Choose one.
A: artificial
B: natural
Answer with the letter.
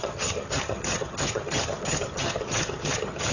A